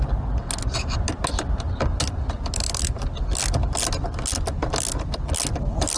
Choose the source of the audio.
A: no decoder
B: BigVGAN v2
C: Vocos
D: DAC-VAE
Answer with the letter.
A